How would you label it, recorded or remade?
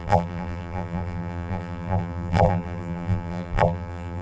remade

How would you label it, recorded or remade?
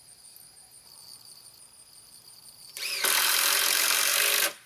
remade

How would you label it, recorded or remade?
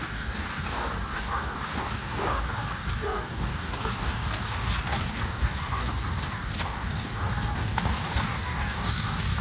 remade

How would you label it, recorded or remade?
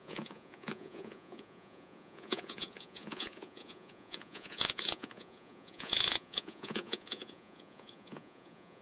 remade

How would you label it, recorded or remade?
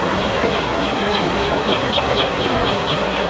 remade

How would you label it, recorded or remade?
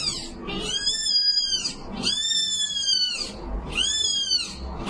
recorded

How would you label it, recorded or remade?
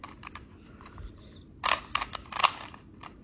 recorded